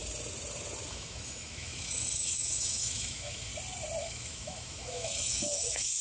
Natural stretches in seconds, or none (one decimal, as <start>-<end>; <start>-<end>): 0.0-0.9; 3.5-4.0